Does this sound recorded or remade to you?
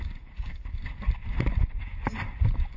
recorded